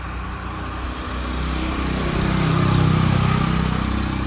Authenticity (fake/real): real